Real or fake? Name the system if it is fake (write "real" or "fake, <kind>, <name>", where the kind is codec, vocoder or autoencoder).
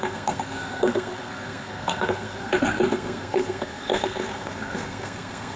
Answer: fake, codec, SNAC